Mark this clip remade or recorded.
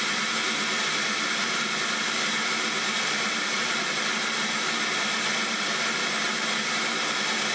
recorded